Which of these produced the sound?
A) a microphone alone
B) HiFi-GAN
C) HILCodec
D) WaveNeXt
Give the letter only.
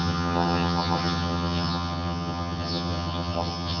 B